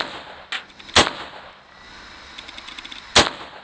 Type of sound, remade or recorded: recorded